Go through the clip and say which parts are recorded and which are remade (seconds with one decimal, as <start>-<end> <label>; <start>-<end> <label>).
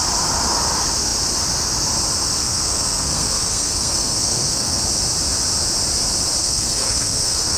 0.0-2.4 recorded; 2.4-4.8 remade; 4.8-6.4 recorded; 6.4-7.6 remade